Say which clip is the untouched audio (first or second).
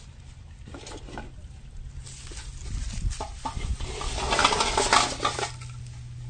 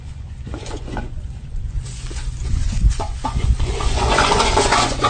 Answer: first